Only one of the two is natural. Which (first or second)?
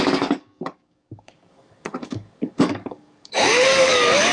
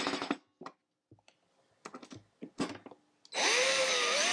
second